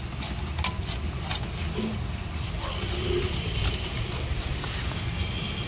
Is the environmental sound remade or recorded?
recorded